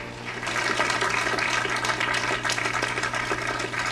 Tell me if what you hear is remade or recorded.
recorded